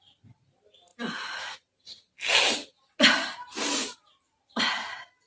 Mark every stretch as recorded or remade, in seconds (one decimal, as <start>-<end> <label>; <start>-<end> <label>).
0.0-5.3 recorded